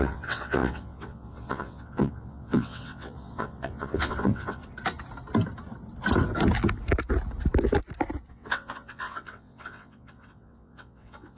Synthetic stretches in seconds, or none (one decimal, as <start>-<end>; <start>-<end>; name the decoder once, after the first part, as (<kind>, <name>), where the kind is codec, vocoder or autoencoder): 0.0-4.6 (vocoder, WaveNeXt); 8.3-11.4